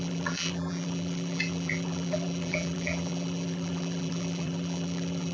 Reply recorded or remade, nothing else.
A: remade